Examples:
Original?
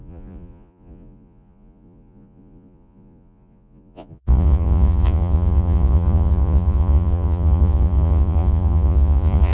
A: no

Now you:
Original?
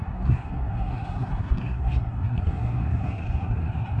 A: no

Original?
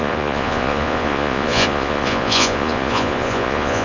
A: no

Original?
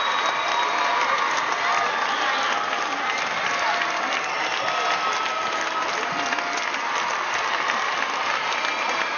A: yes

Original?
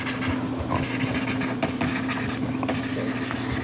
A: yes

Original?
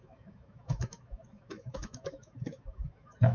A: no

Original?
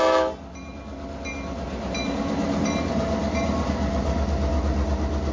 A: yes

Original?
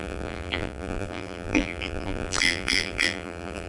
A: no